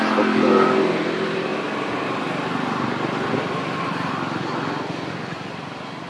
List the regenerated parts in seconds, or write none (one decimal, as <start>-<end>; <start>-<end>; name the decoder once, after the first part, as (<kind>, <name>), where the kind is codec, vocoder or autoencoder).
none